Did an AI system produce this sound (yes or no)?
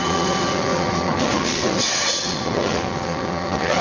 yes